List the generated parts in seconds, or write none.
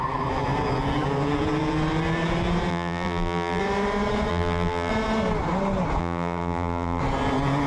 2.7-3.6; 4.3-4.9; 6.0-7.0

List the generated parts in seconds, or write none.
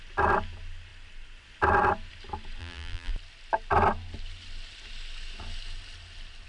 2.6-3.1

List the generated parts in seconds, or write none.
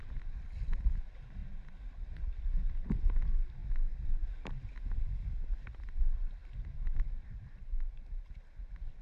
0.0-1.4; 2.2-3.6; 5.6-9.0